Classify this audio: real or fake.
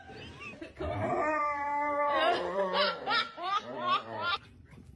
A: fake